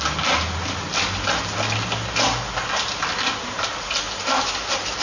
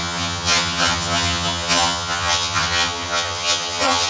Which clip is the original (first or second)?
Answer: first